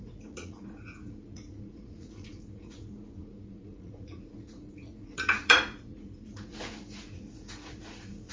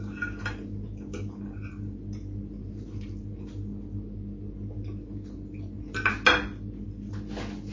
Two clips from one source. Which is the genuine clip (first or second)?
second